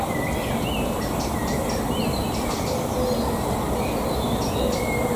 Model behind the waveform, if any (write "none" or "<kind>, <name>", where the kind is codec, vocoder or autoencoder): none